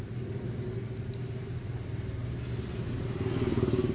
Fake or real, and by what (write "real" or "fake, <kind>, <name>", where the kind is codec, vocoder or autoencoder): real